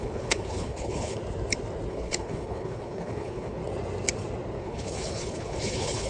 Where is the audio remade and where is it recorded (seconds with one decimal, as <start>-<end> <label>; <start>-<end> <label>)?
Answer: 0.0-1.2 remade; 1.2-1.9 recorded; 1.9-3.6 remade; 3.6-4.6 recorded; 4.6-6.1 remade